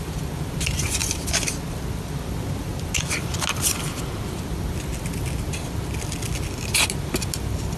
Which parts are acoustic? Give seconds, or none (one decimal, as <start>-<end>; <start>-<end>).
0.0-7.8